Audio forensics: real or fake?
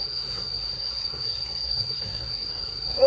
fake